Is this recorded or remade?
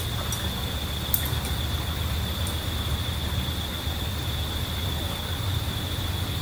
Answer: recorded